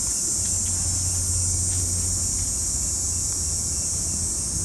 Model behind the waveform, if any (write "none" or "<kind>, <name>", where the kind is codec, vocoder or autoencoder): none